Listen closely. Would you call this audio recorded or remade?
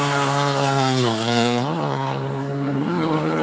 remade